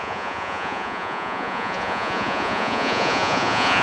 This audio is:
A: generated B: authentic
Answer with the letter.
A